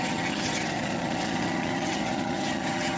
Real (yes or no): no